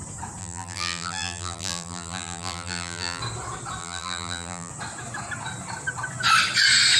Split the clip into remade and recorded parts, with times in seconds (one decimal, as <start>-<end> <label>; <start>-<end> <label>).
0.0-0.4 recorded; 0.4-3.2 remade; 3.2-3.8 recorded; 3.8-4.7 remade; 4.7-7.0 recorded

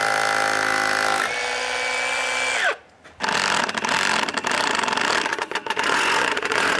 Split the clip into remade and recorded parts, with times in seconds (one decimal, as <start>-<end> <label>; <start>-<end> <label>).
0.0-5.3 recorded; 5.3-6.8 remade

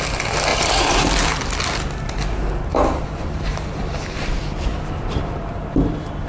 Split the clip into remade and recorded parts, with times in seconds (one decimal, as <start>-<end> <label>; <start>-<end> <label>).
0.0-0.5 recorded; 0.5-1.3 remade; 1.3-2.7 recorded; 2.7-5.6 remade; 5.6-6.3 recorded

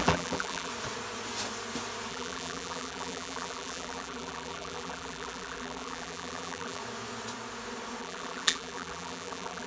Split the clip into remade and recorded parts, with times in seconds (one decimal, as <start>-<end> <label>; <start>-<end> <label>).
0.0-0.7 remade; 0.7-2.1 recorded; 2.1-6.8 remade; 6.8-8.0 recorded; 8.0-9.7 remade

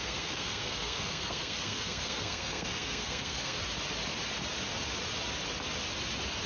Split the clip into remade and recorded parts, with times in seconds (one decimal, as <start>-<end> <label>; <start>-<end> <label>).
0.0-3.6 remade; 3.6-6.5 recorded